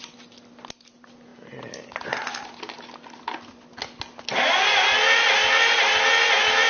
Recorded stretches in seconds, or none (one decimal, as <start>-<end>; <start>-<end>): 0.0-6.7